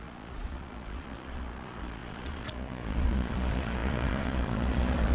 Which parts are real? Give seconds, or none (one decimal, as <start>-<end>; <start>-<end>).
none